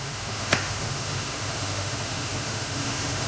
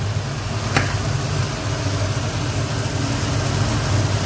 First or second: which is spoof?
first